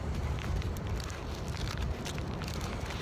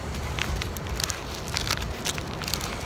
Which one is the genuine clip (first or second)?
second